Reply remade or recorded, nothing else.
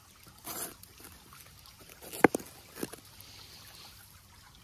recorded